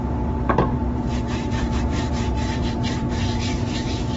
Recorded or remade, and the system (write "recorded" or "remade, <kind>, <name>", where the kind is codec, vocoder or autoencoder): remade, vocoder, BigVGAN v2